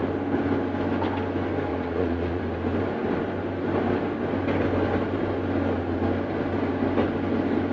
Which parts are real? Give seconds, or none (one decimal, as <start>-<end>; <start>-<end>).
0.0-1.7; 2.4-7.7